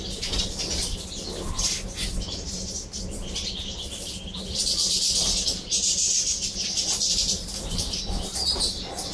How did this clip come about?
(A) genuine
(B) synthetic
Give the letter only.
A